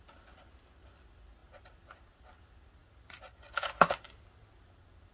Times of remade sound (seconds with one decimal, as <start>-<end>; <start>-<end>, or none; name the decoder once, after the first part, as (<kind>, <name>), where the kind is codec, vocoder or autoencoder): none